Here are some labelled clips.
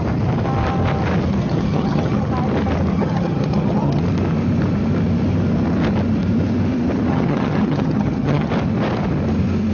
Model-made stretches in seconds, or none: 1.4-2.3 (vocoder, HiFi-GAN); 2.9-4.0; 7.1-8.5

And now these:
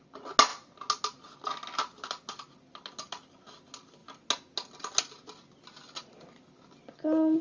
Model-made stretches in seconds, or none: none